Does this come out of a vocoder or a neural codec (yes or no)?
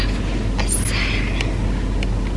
no